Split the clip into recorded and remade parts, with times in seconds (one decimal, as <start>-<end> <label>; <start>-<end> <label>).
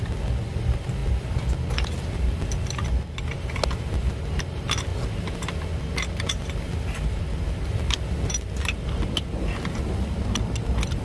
0.0-11.0 recorded